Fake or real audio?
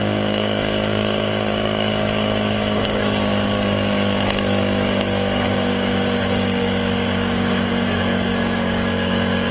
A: fake